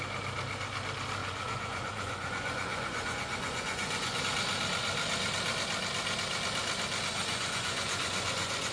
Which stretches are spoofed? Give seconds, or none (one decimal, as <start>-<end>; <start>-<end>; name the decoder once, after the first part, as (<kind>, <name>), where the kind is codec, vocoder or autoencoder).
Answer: 1.2-4.2 (vocoder, Vocos); 7.1-8.7